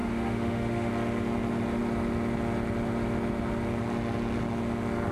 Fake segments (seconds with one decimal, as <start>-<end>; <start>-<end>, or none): 0.0-0.9